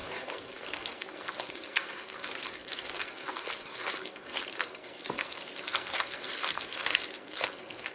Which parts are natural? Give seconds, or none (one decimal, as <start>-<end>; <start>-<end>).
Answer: none